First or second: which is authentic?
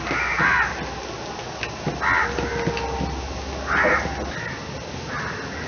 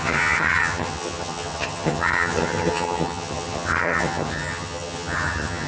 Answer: first